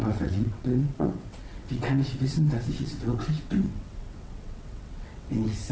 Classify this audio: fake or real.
fake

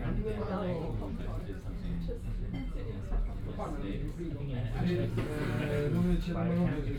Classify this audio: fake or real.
real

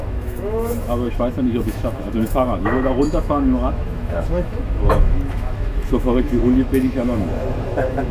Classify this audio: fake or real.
fake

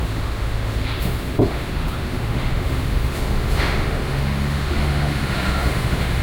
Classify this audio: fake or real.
fake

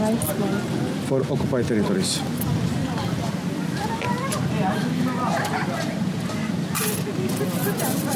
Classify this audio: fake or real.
real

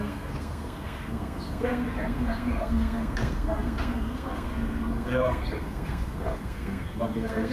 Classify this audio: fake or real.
fake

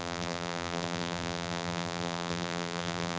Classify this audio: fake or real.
fake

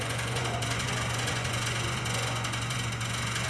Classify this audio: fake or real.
fake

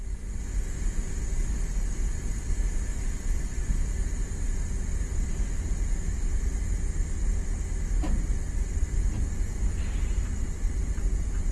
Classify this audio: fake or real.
real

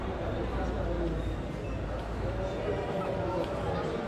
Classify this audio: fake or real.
real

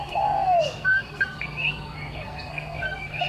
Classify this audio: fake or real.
fake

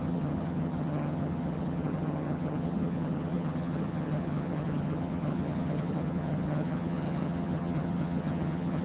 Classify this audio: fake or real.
fake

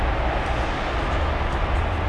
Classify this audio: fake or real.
real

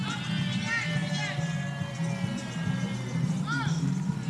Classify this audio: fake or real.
real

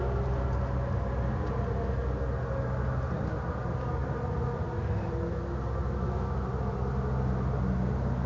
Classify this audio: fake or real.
real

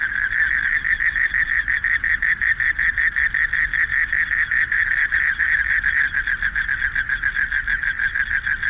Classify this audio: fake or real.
real